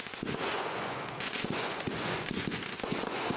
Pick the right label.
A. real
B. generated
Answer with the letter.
B